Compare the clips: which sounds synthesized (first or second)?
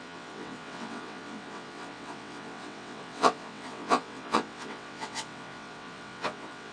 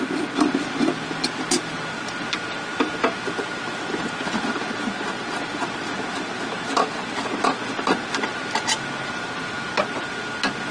first